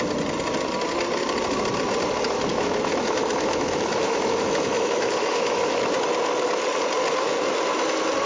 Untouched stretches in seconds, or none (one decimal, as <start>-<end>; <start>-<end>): 0.0-2.5; 5.8-8.3